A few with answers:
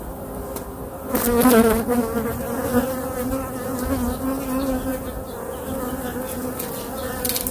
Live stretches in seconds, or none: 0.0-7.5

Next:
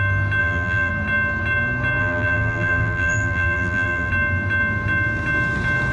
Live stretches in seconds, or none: 0.0-0.4; 0.9-2.0; 4.1-5.9

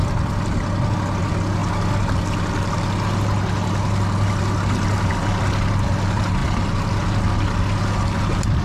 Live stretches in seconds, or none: 0.0-8.6

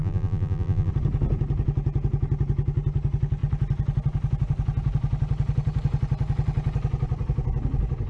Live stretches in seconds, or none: 0.9-8.1